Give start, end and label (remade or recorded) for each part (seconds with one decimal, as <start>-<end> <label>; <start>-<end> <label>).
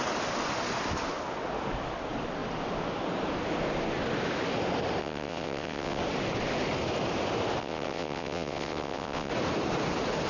0.0-5.0 recorded; 5.0-6.0 remade; 6.0-7.6 recorded; 7.6-9.3 remade; 9.3-10.3 recorded